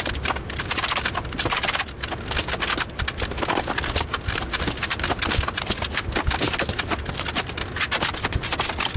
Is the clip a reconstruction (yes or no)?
no